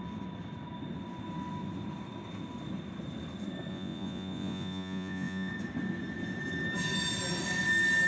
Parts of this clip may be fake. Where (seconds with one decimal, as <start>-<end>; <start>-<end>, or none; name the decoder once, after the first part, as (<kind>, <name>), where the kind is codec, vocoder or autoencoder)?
3.7-5.5 (vocoder, Vocos)